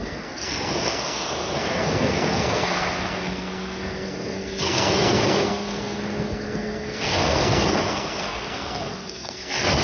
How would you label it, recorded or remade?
remade